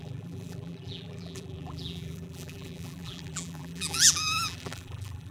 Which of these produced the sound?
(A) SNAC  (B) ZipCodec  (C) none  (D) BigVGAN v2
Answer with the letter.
D